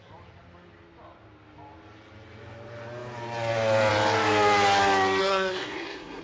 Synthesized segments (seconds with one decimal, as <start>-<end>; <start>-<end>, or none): 5.2-6.2